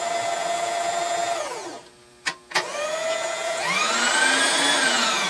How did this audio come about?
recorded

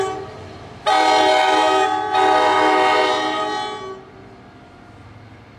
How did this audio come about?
recorded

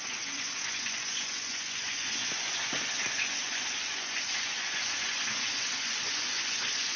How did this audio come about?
remade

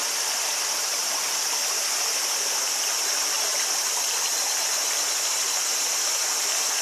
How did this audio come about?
recorded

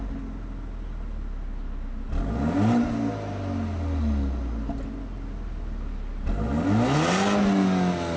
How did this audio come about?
recorded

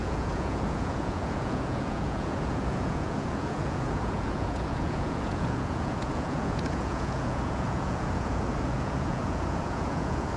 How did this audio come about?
remade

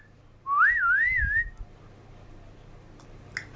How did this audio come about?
recorded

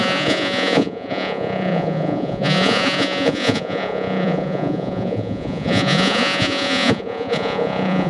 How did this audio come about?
remade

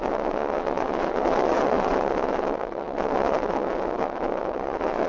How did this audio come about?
remade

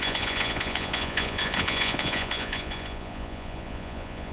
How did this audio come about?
remade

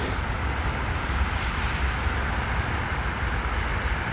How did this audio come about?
recorded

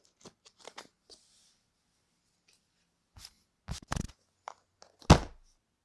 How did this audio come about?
recorded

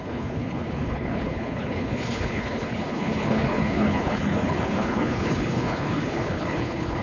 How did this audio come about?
remade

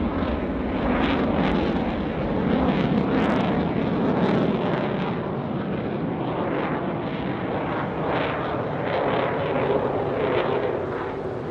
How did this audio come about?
recorded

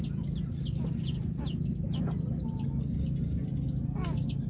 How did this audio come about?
recorded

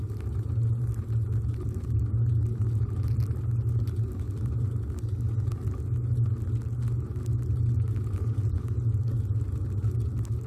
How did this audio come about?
recorded